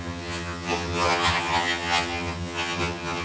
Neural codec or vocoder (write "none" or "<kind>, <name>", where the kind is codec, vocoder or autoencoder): vocoder, HiFi-GAN